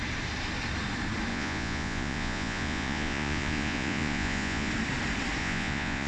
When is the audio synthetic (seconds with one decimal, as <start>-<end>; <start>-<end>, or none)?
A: 1.3-4.7; 5.4-6.1